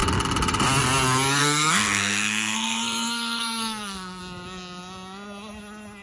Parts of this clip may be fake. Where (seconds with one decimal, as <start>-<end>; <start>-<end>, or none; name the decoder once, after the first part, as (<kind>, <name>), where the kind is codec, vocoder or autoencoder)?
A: 1.4-4.2 (codec, SNAC)